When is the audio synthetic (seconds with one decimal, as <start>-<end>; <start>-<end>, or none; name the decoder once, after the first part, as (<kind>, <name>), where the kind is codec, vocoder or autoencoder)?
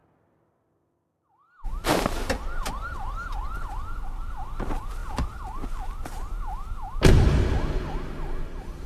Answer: 0.0-1.9 (vocoder, BigVGAN v2); 2.6-4.0